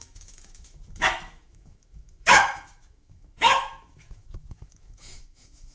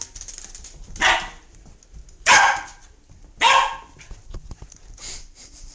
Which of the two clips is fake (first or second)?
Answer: first